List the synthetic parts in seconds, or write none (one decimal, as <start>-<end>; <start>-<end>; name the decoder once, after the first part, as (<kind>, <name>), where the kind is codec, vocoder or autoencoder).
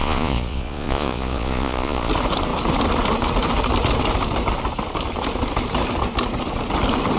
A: 0.0-2.1 (vocoder, Vocos)